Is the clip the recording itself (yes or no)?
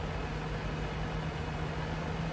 yes